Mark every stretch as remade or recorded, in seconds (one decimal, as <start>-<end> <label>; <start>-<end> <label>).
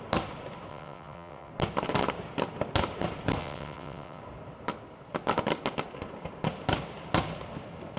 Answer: 0.0-0.7 recorded; 0.7-1.5 remade; 1.5-3.4 recorded; 3.4-4.2 remade; 4.2-8.0 recorded